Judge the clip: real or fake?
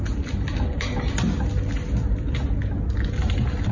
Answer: real